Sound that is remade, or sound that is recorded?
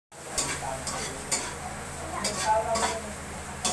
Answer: recorded